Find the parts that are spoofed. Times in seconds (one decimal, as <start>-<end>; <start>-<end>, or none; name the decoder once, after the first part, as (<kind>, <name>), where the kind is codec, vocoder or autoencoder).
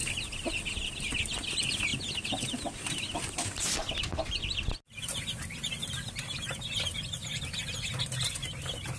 none